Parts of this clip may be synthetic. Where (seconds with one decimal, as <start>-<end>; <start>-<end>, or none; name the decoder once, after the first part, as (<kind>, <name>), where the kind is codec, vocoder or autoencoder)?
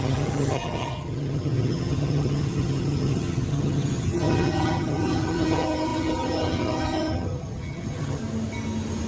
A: 0.0-8.2 (vocoder, HiFi-GAN)